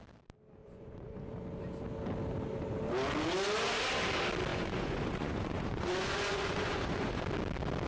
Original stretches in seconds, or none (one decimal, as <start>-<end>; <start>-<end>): 0.0-0.6; 1.3-4.5; 7.2-7.9